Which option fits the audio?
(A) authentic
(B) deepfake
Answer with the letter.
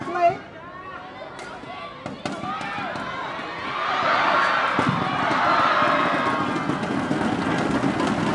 A